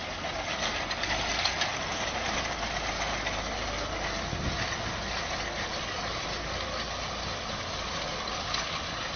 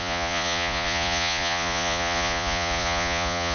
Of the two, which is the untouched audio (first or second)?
first